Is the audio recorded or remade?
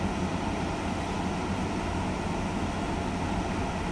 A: recorded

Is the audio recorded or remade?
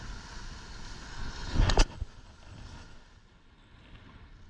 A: recorded